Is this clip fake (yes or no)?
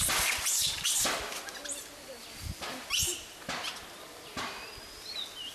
no